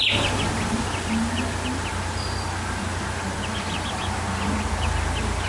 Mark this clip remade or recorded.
recorded